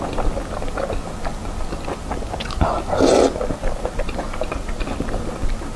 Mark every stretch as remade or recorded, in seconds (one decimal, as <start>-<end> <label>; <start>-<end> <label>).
0.0-5.8 recorded